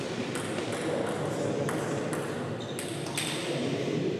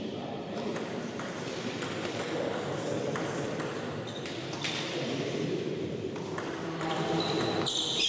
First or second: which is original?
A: first